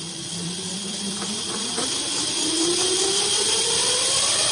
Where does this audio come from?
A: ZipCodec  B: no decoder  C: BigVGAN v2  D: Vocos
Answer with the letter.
C